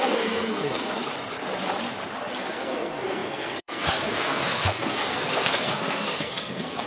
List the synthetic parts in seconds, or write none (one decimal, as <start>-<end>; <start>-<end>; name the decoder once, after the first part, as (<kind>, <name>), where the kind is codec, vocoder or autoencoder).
0.0-1.0 (codec, SNAC); 2.4-6.9